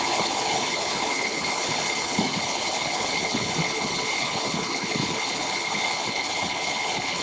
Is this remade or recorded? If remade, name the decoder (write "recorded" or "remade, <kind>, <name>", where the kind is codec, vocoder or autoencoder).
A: remade, codec, HILCodec